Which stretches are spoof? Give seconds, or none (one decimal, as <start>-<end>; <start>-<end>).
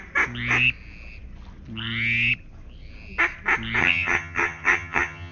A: 3.8-5.3